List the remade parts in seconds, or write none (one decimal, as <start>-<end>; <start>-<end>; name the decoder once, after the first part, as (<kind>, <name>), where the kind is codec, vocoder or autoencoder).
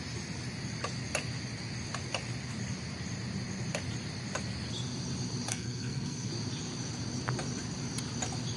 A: 5.5-6.3 (codec, SNAC)